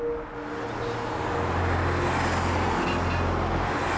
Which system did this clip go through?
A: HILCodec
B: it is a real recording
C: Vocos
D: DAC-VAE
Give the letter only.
B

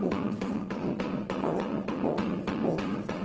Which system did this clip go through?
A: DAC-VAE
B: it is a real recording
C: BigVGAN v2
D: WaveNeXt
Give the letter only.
D